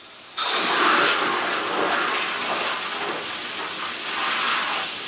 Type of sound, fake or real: real